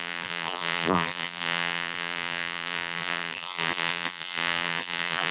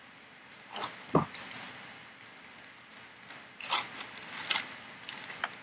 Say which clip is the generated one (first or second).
first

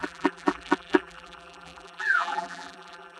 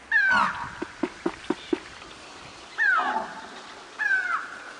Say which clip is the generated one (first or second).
first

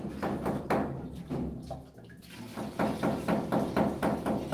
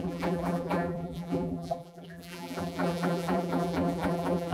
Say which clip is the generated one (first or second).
second